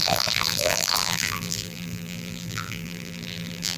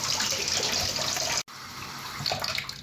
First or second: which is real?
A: second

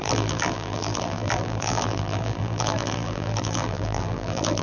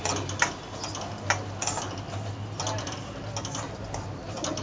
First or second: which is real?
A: second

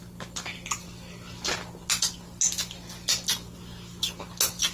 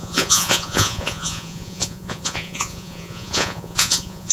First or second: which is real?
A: first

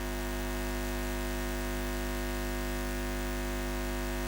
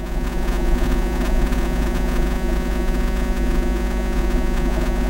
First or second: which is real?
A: first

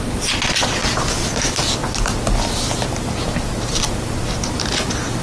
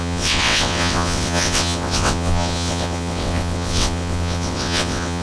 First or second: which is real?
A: first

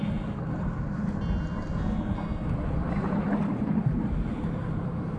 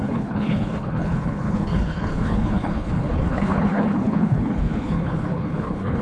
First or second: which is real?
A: first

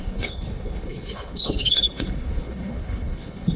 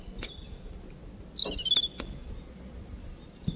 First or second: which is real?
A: second